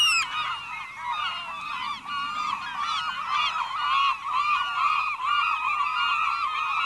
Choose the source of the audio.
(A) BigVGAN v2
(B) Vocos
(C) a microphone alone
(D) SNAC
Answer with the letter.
C